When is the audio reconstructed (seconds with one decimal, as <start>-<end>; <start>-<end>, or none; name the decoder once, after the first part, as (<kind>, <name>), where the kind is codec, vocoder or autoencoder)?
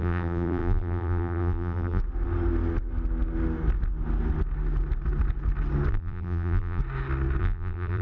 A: 0.0-2.0 (vocoder, BigVGAN v2); 5.9-6.8; 7.4-8.0